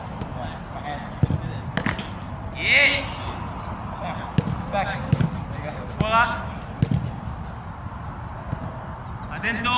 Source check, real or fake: real